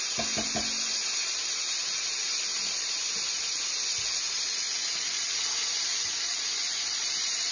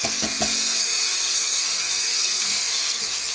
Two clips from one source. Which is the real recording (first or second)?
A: first